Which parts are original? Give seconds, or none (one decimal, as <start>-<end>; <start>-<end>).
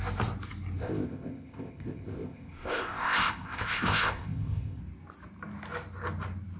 0.0-0.8; 4.8-6.6